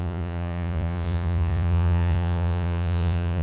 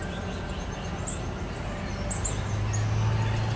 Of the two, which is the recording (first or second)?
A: second